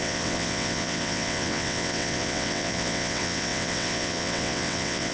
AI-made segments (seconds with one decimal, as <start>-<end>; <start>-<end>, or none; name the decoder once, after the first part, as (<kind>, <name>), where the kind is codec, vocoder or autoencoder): 0.0-5.1 (vocoder, WaveNeXt)